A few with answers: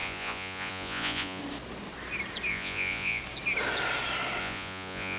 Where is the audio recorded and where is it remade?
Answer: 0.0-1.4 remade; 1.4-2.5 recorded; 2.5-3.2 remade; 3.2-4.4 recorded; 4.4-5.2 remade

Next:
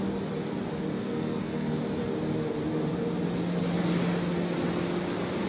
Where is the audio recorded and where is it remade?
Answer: 0.0-1.0 recorded; 1.0-2.0 remade; 2.0-5.5 recorded

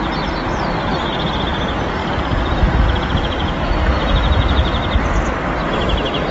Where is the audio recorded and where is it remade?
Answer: 0.0-2.0 recorded; 2.0-5.3 remade; 5.3-6.3 recorded

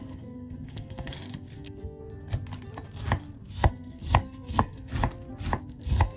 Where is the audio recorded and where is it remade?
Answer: 0.0-2.0 remade; 2.0-3.5 recorded; 3.5-4.9 remade; 4.9-5.6 recorded; 5.6-6.2 remade